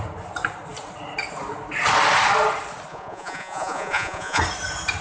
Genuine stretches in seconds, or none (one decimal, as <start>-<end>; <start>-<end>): 0.0-2.9; 4.4-5.0